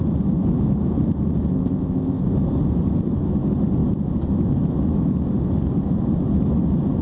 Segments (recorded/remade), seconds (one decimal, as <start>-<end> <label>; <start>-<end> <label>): 0.0-1.5 recorded; 1.5-2.2 remade; 2.2-7.0 recorded

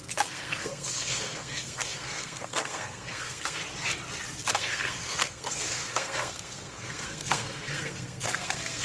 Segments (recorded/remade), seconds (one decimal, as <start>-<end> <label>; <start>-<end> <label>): 0.0-3.6 remade; 3.6-4.5 recorded; 4.5-8.8 remade